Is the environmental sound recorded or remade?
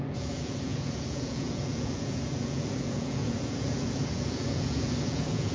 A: remade